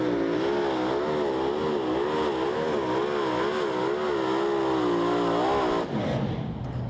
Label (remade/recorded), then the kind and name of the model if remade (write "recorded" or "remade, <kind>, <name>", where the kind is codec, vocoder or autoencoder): recorded